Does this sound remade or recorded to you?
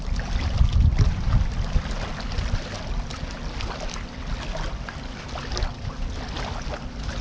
recorded